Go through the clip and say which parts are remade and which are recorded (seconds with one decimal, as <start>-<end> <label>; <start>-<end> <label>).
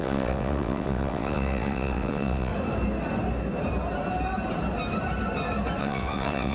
0.0-2.5 remade; 2.5-5.8 recorded; 5.8-6.5 remade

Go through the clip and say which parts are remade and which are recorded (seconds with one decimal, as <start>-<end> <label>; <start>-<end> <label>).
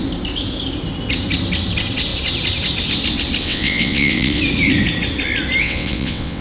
0.0-3.4 recorded; 3.4-4.4 remade; 4.4-5.6 recorded; 5.6-6.4 remade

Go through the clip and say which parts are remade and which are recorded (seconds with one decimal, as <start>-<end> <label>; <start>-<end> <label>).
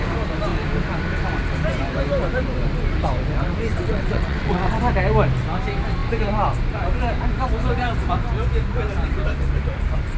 0.0-3.7 recorded; 3.7-4.8 remade; 4.8-10.2 recorded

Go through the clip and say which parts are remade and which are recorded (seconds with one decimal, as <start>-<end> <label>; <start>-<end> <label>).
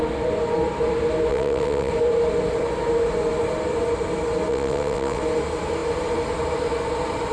0.0-1.3 recorded; 1.3-1.9 remade; 1.9-4.5 recorded; 4.5-5.2 remade; 5.2-7.3 recorded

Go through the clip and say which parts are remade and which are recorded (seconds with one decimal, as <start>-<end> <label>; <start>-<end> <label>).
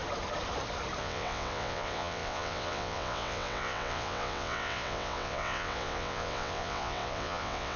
0.0-1.0 recorded; 1.0-7.8 remade